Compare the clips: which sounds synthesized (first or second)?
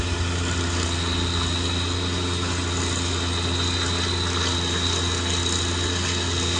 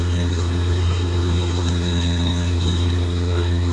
second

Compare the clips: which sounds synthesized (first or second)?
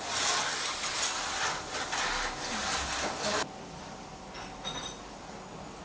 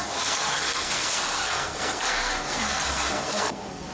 second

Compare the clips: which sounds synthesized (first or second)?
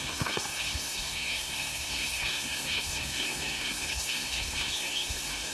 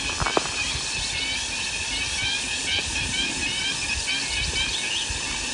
first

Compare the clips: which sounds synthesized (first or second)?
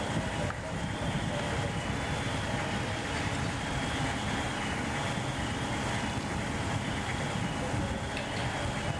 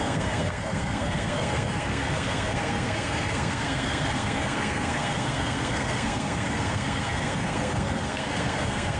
second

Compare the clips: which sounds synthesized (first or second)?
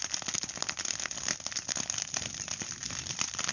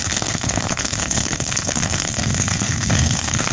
second